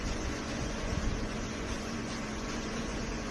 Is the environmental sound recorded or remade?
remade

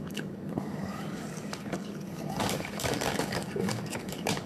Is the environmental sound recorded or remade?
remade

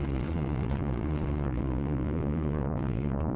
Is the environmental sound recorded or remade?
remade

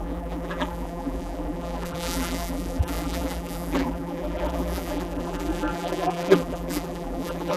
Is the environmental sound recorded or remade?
remade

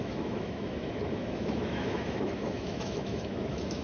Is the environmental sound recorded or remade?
remade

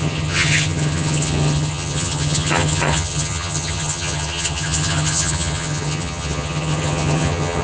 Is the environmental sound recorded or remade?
remade